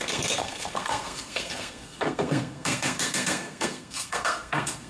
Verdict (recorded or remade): remade